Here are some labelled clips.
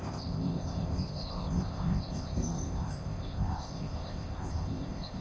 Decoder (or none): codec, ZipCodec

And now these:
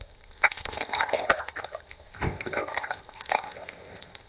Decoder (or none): codec, ZipCodec